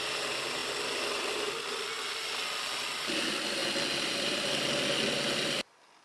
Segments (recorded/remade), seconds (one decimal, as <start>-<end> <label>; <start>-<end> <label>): 0.0-6.0 recorded